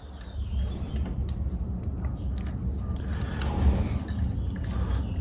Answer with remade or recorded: recorded